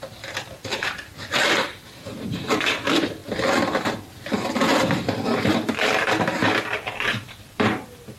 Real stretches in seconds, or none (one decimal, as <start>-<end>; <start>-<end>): none